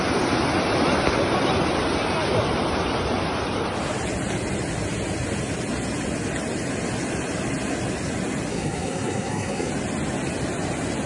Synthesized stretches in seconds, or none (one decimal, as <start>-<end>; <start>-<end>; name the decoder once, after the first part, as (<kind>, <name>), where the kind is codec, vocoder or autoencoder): 8.5-9.7 (codec, SNAC)